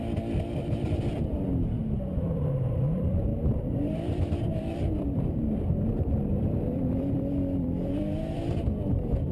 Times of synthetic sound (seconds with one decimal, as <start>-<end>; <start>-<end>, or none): 0.0-9.3